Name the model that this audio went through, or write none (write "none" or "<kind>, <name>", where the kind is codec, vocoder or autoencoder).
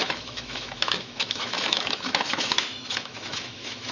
autoencoder, DAC-VAE